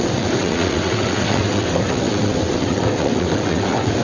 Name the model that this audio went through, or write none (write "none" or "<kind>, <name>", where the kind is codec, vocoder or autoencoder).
vocoder, WaveNeXt